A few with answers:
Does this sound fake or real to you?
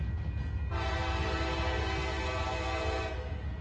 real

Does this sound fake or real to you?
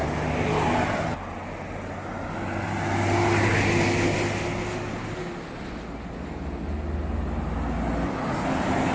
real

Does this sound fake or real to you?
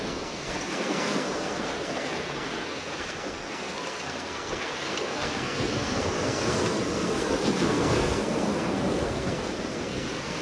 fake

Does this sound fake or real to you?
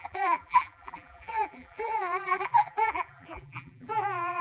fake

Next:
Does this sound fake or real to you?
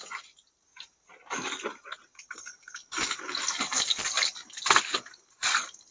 real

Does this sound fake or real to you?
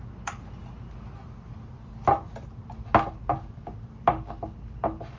real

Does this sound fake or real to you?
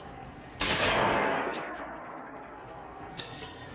fake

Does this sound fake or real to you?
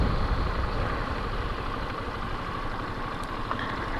real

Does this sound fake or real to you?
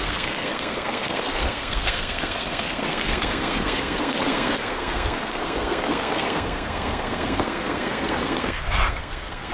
fake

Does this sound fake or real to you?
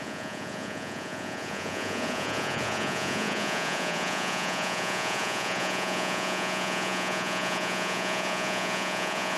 fake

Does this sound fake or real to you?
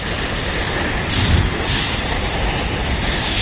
fake